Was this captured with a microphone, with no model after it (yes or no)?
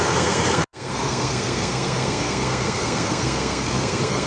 no